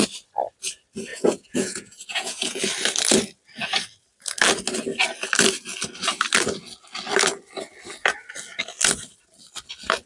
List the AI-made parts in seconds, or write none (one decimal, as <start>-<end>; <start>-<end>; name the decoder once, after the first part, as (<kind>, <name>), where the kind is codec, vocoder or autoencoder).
1.1-2.6 (vocoder, Vocos)